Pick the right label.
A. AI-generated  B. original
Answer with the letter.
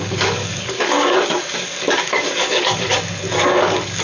A